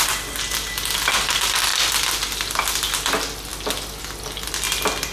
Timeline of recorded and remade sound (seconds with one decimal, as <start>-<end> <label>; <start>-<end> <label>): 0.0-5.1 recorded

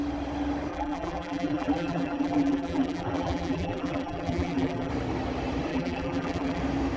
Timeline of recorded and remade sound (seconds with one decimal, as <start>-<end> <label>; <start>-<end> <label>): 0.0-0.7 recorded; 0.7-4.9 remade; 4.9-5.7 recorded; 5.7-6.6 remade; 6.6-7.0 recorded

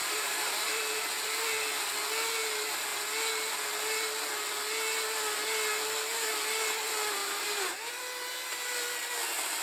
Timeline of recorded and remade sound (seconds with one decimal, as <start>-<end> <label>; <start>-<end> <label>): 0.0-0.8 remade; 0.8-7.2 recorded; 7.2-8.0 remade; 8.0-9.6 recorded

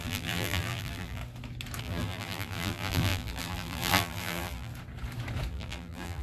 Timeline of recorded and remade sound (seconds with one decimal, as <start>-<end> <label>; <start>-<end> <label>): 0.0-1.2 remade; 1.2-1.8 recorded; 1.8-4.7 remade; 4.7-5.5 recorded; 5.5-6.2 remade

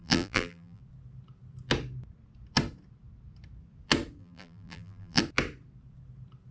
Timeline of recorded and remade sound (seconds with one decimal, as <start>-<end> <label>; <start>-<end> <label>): 0.0-0.8 remade; 0.8-4.2 recorded; 4.2-5.2 remade; 5.2-6.5 recorded

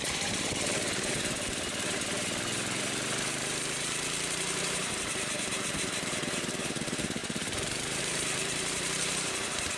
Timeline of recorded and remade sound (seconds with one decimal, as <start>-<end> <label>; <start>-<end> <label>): 0.0-9.8 remade